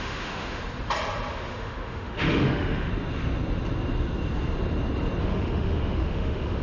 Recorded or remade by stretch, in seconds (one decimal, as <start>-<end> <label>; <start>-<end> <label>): 0.0-0.6 remade; 0.6-1.3 recorded; 1.3-2.9 remade; 2.9-5.2 recorded; 5.2-6.6 remade